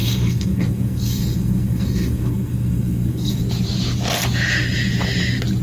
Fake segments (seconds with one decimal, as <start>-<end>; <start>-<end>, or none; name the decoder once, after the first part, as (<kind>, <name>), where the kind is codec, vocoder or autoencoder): 0.0-3.4 (codec, SNAC)